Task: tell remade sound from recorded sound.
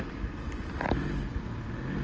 recorded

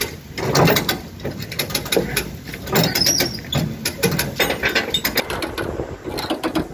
recorded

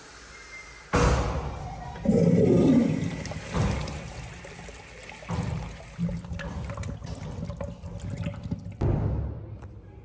recorded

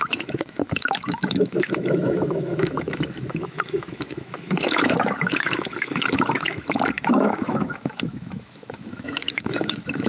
remade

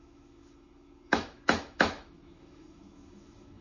remade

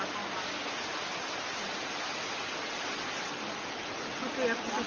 recorded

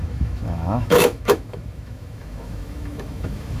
remade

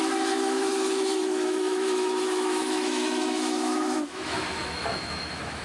remade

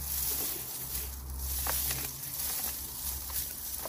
recorded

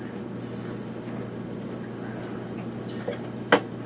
recorded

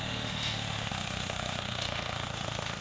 remade